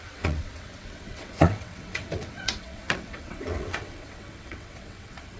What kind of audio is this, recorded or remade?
remade